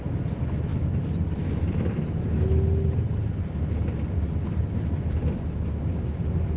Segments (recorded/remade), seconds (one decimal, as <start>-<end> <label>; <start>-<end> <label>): 0.0-6.6 recorded